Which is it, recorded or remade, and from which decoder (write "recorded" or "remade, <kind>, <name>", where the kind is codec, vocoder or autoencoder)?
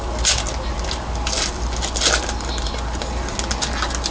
recorded